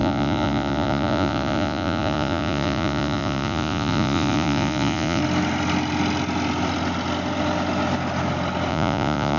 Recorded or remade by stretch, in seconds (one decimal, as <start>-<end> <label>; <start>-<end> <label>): 0.0-5.2 remade; 5.2-8.7 recorded; 8.7-9.4 remade